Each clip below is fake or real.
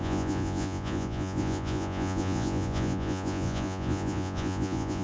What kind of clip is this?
fake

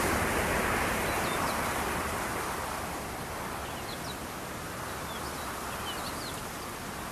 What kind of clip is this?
real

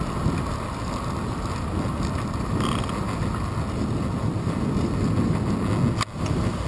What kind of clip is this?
real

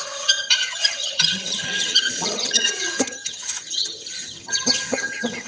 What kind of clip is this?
fake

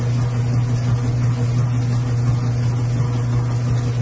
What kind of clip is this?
real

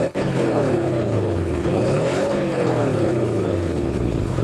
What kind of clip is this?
fake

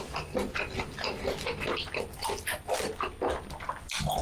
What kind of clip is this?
real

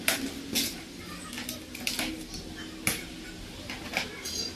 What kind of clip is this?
real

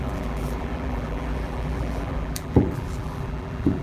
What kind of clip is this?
fake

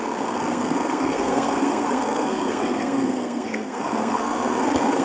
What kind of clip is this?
fake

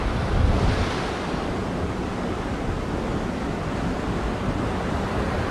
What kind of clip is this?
real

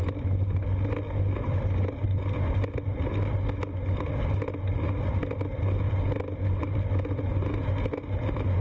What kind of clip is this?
real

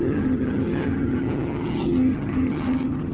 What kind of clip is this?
fake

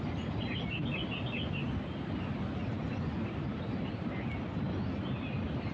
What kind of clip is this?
real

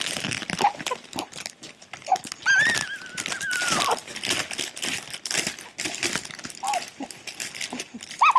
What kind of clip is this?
real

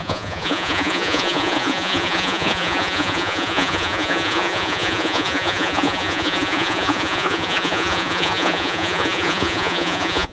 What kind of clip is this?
fake